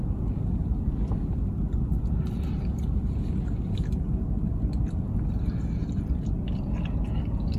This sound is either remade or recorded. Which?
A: recorded